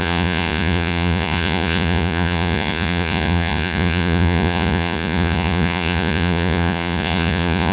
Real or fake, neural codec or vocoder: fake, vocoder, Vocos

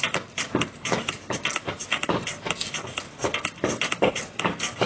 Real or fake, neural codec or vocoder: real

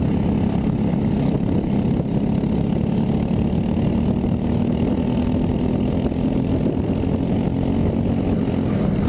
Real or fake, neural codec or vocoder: real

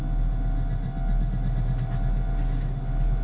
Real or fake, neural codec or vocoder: real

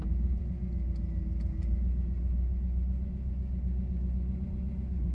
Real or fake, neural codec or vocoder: real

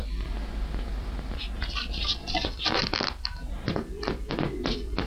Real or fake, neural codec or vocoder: fake, vocoder, BigVGAN v2